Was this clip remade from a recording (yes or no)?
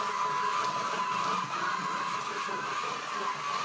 no